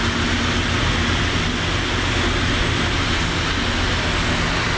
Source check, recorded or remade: recorded